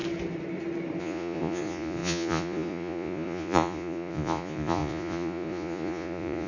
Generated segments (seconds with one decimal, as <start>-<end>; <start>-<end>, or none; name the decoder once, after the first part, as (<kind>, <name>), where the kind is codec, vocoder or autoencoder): 1.0-6.5 (vocoder, Vocos)